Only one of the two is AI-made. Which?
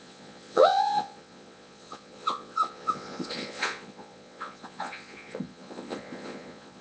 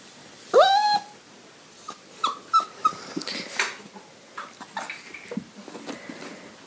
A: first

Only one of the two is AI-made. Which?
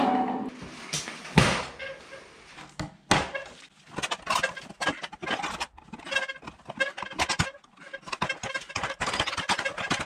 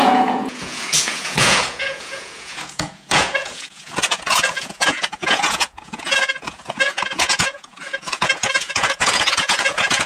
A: second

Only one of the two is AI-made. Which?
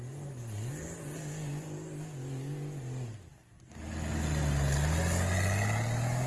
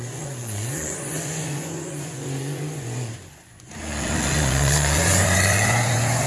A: second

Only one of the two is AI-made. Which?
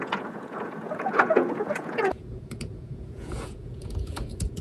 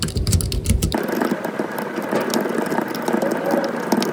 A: first